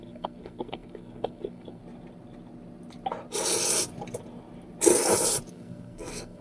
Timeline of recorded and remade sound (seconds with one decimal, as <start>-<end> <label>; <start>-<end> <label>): 0.0-1.8 remade; 1.8-5.5 recorded; 5.5-6.4 remade